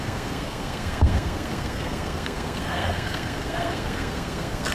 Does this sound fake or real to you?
fake